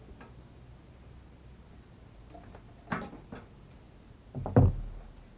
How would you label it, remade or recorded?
recorded